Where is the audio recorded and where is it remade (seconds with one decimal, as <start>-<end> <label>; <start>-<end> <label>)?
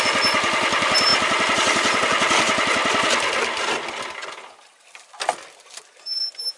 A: 0.0-6.6 recorded